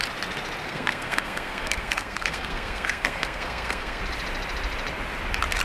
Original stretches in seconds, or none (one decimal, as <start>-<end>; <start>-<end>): 0.0-0.6; 4.0-5.6